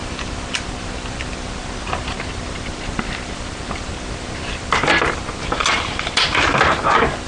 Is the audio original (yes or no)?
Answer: yes